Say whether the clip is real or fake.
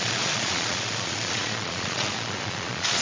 fake